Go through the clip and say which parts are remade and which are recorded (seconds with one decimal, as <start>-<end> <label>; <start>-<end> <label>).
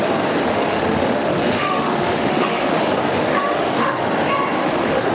0.0-0.4 recorded; 0.4-2.8 remade; 2.8-3.3 recorded; 3.3-4.1 remade; 4.1-4.6 recorded; 4.6-5.1 remade